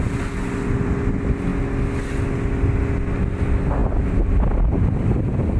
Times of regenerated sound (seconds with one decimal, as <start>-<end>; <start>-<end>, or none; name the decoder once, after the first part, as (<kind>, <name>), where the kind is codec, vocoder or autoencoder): none

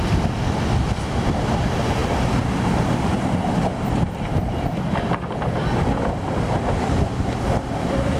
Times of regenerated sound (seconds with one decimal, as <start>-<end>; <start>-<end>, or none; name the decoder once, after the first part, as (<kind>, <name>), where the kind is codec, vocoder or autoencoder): 0.0-8.2 (vocoder, BigVGAN v2)

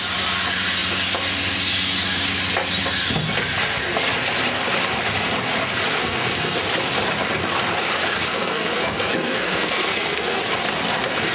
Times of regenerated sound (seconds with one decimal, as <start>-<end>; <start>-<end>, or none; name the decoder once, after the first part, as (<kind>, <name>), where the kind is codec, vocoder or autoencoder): 6.0-6.6 (codec, SNAC); 8.0-10.4

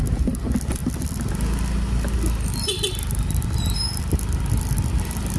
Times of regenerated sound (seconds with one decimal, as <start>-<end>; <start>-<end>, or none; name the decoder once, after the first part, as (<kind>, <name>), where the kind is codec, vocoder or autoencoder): none

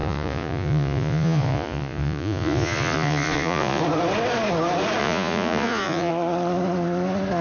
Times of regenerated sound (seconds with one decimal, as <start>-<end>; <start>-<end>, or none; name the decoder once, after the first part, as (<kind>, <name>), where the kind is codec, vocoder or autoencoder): 0.0-3.8 (vocoder, Vocos); 5.0-6.1

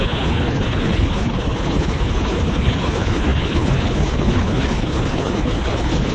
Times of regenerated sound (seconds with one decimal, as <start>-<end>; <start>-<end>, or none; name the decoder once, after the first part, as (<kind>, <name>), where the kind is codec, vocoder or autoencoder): 0.0-6.1 (codec, HILCodec)